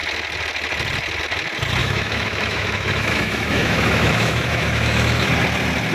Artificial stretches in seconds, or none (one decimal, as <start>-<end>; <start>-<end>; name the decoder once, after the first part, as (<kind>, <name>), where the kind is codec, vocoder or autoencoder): 1.8-5.3 (autoencoder, DAC-VAE)